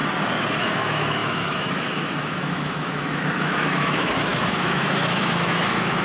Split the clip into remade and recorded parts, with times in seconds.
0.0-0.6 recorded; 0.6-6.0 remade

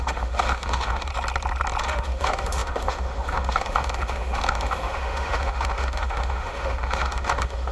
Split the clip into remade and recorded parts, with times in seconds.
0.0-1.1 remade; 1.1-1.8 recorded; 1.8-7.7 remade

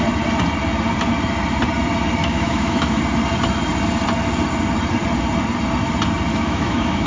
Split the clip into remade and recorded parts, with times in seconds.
0.0-2.2 recorded; 2.2-3.0 remade; 3.0-6.3 recorded; 6.3-7.1 remade